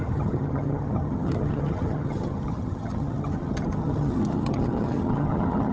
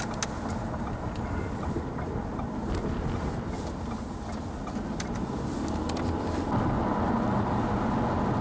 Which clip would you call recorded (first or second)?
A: second